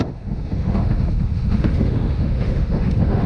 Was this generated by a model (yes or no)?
yes